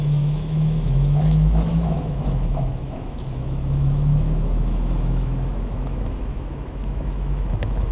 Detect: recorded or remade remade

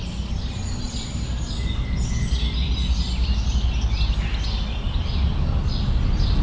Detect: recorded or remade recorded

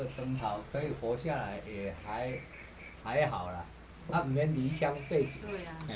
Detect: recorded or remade recorded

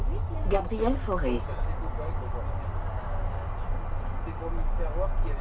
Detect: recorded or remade recorded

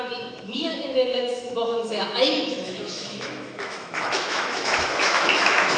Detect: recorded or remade remade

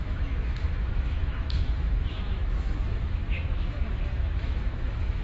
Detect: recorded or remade remade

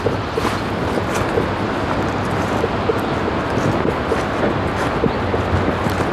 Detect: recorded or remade recorded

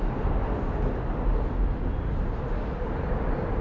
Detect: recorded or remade recorded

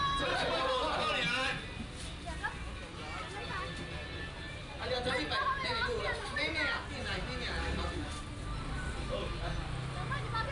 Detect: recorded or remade recorded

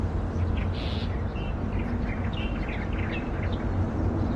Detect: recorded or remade recorded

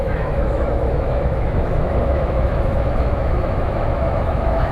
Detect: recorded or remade remade